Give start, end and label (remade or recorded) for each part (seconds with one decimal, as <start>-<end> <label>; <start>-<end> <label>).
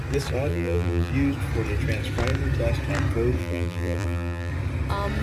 0.0-0.5 recorded; 0.5-1.1 remade; 1.1-3.4 recorded; 3.4-4.5 remade; 4.5-5.2 recorded